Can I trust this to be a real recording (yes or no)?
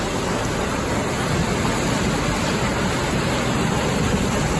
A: yes